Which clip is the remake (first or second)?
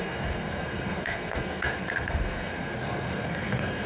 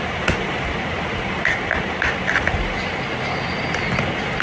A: first